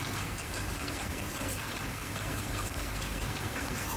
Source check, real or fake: fake